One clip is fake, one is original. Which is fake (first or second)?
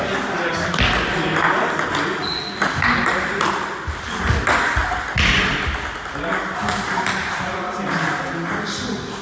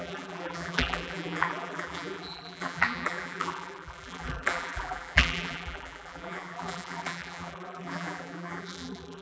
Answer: second